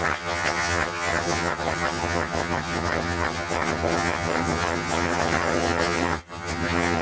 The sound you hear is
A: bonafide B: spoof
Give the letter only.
B